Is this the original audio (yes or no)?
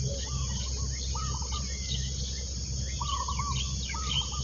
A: yes